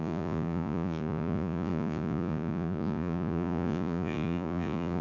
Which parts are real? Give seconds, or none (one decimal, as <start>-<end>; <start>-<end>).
none

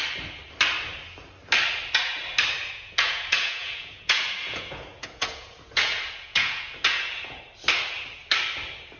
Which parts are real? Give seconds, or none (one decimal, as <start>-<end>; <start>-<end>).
0.0-2.6; 7.4-9.0

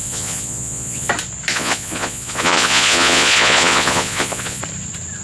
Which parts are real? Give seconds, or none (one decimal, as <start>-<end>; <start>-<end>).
1.1-1.5; 4.6-5.2

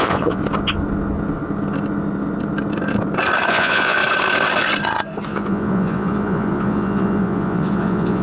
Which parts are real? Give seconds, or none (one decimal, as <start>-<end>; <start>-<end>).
0.4-3.5; 4.0-5.3

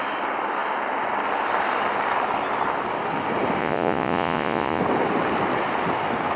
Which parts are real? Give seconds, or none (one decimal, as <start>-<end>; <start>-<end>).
0.0-3.6; 4.8-6.4

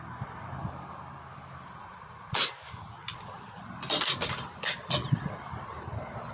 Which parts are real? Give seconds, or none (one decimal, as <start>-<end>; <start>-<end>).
0.0-6.3

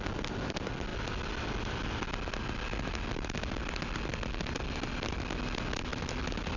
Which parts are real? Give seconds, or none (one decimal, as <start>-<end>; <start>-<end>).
0.0-6.6

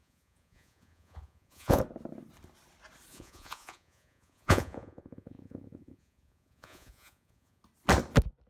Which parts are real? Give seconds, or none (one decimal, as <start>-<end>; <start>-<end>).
1.8-3.1; 7.6-8.5